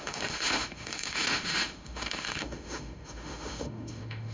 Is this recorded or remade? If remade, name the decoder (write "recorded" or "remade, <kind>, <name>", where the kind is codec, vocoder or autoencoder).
remade, autoencoder, DAC-VAE